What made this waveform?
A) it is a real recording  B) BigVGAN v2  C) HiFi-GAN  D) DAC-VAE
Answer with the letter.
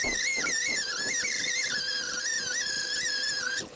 B